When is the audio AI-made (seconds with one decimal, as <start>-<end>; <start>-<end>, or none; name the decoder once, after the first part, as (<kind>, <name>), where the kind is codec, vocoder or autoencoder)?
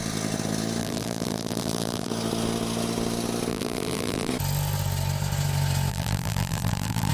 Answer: 0.8-2.1 (vocoder, BigVGAN v2); 3.5-4.3; 5.9-7.1